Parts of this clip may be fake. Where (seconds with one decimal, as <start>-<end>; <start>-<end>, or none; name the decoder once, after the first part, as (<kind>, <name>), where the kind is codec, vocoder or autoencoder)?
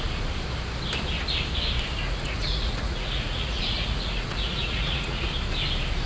2.0-5.2 (vocoder, Vocos)